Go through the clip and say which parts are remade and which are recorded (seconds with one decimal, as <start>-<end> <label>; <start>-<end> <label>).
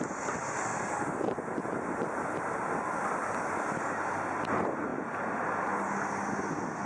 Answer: 0.0-0.7 recorded; 0.7-2.0 remade; 2.0-6.9 recorded